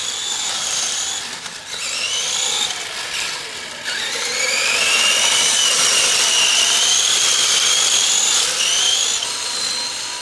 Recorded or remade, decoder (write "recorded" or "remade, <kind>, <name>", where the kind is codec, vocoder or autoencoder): recorded